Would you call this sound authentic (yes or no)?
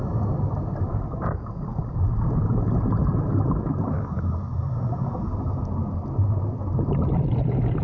yes